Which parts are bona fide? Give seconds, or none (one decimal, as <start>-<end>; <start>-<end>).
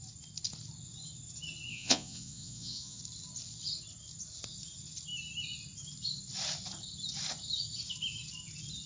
0.0-1.7; 3.0-8.9